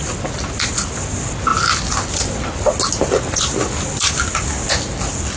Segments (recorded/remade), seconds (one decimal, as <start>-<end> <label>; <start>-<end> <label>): 0.0-5.4 recorded